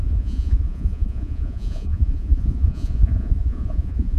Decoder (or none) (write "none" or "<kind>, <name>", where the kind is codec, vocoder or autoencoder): vocoder, Vocos